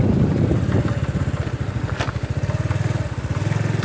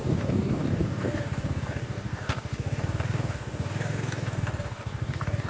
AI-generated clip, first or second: second